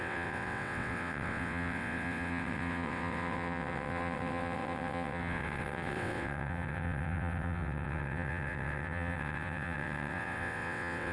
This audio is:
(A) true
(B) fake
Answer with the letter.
B